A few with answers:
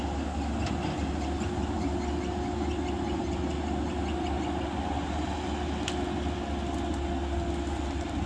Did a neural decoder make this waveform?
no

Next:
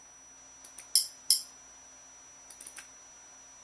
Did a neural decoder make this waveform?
no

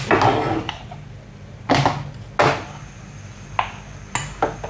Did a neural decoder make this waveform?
no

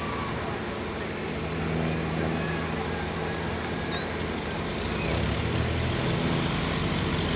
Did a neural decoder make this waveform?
no